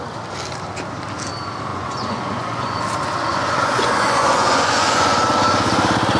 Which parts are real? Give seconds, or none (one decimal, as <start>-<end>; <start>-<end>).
0.0-1.7; 2.8-3.3; 5.2-6.2